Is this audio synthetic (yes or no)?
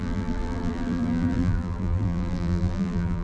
yes